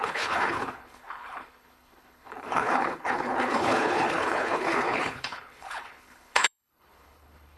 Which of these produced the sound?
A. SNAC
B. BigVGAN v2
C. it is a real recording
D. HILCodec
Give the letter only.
D